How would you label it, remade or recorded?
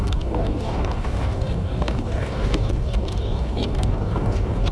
remade